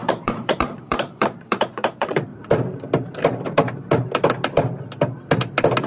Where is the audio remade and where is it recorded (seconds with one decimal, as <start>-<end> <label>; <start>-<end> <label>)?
0.0-2.3 remade; 2.3-5.9 recorded